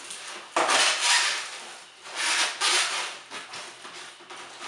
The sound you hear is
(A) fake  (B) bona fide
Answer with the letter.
B